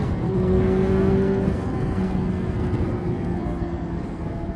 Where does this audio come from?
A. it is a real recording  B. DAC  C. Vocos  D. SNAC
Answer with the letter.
D